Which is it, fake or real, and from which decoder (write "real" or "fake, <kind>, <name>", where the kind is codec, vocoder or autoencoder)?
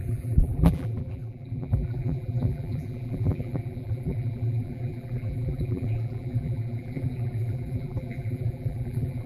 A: fake, vocoder, BigVGAN v2